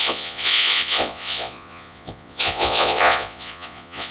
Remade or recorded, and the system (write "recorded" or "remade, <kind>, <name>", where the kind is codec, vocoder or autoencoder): remade, vocoder, Vocos